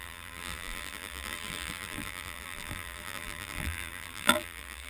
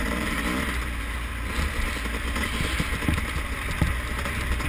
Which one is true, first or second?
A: second